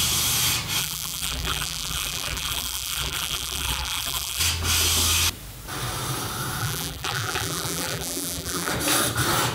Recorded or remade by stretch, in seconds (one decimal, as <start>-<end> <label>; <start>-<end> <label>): 0.0-0.8 recorded; 0.8-4.4 remade; 4.4-6.6 recorded; 6.6-8.7 remade; 8.7-9.5 recorded